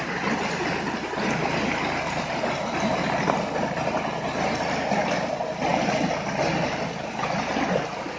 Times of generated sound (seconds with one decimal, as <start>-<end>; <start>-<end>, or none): none